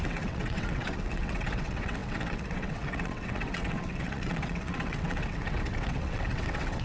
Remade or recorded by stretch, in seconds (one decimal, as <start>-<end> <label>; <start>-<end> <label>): 0.0-6.8 remade